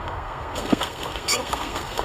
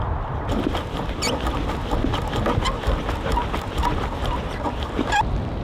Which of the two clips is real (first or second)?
second